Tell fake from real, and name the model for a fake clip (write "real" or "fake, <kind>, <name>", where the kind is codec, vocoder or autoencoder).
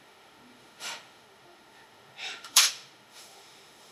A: fake, autoencoder, DAC-VAE